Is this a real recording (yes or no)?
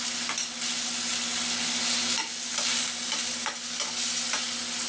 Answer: yes